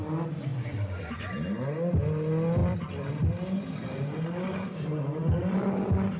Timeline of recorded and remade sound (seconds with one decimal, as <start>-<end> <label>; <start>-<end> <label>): 0.0-0.5 recorded; 0.5-1.1 remade; 1.1-2.6 recorded; 2.6-3.3 remade; 3.3-5.2 recorded; 5.2-6.2 remade